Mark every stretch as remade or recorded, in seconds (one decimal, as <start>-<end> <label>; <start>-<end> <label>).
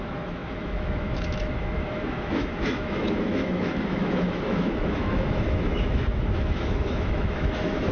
0.0-7.9 remade